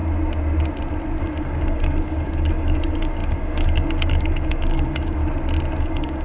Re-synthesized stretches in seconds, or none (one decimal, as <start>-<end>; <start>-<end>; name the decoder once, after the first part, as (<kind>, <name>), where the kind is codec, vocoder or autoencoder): 1.2-5.2 (codec, DAC); 5.8-6.2